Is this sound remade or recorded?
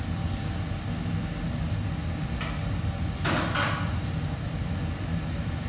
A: recorded